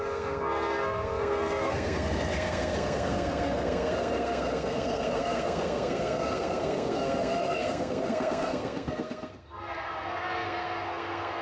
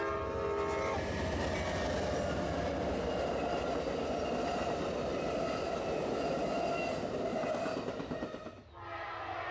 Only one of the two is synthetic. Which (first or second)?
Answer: first